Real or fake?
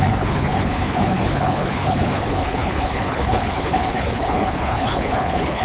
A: fake